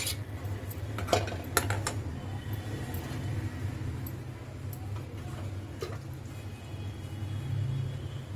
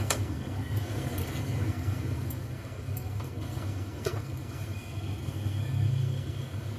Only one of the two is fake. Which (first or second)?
second